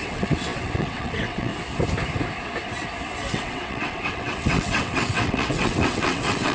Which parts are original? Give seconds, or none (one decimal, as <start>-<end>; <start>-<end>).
1.5-3.3